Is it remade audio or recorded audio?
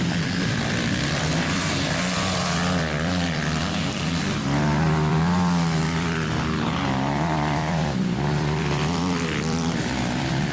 remade